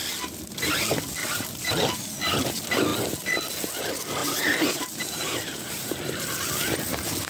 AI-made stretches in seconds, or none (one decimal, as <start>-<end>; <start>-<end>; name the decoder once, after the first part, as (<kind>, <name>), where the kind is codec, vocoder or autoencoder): 1.2-1.7 (vocoder, BigVGAN v2); 4.2-6.2

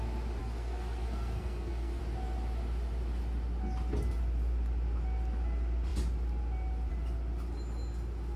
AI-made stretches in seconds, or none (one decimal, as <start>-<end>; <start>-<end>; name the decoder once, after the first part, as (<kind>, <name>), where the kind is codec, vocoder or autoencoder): 0.4-2.0 (codec, SNAC)

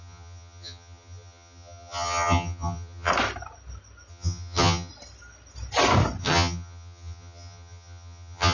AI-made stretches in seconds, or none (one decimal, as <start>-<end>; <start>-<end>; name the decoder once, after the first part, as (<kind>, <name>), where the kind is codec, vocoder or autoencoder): 0.0-3.1 (vocoder, HiFi-GAN); 4.1-4.9; 6.2-8.5

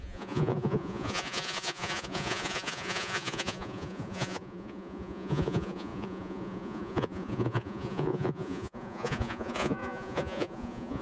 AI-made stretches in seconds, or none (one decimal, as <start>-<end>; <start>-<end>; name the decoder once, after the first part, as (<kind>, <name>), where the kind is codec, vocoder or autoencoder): 0.0-11.0 (vocoder, Vocos)

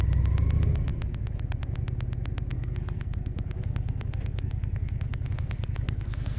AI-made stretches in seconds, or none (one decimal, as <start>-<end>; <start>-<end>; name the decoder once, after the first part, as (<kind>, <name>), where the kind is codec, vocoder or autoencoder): 2.5-6.4 (codec, SNAC)

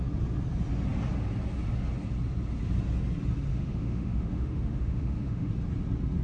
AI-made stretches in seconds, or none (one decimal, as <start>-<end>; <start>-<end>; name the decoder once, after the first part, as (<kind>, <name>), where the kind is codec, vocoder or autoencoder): 3.5-5.5 (autoencoder, DAC-VAE)

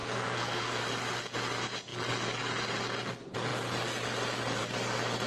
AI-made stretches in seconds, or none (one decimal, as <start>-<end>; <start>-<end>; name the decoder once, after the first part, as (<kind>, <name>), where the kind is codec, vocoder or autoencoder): 0.0-0.8 (codec, SNAC)